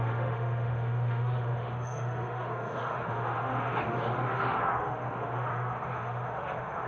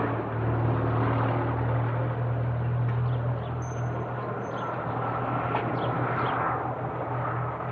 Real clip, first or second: second